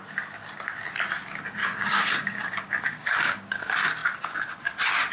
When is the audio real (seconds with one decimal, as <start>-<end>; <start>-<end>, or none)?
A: 0.0-1.6; 3.6-5.1